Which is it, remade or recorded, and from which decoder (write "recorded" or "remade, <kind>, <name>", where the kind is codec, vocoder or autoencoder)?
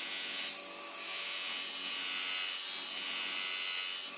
recorded